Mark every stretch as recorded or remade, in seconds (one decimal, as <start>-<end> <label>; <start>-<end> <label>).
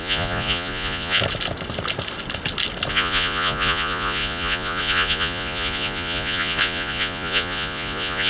0.0-1.2 remade; 1.2-2.9 recorded; 2.9-8.3 remade